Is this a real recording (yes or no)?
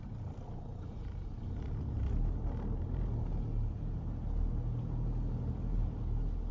yes